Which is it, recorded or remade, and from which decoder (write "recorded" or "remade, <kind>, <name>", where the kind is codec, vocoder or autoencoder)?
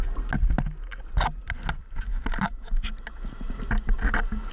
recorded